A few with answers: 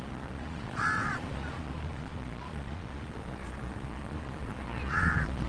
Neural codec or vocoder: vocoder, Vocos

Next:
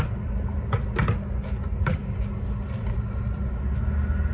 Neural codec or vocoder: none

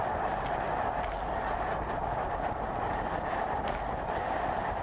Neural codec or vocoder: none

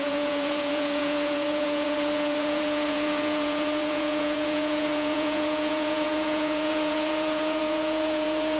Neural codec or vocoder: vocoder, Vocos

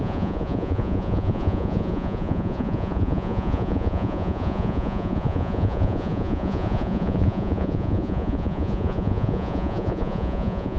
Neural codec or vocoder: vocoder, Vocos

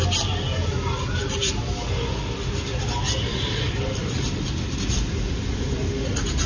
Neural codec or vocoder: none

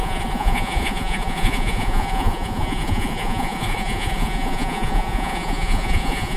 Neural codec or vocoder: vocoder, Vocos